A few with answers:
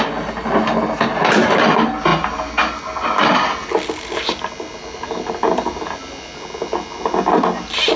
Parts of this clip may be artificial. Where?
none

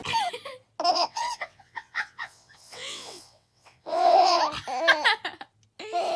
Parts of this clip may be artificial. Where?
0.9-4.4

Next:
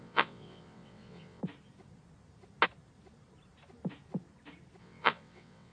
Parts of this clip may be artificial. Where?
0.0-1.4; 4.8-5.7

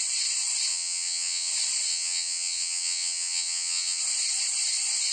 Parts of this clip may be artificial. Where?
0.7-1.5; 1.9-4.0

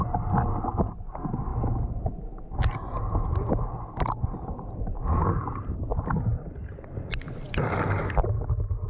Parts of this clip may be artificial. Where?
none

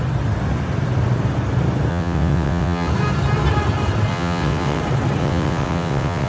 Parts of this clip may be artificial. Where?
1.9-2.9; 4.1-4.8; 5.2-6.3

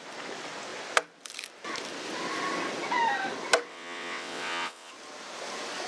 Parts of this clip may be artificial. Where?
3.7-4.9

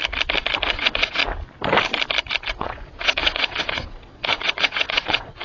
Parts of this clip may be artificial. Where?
0.7-1.2; 2.5-5.4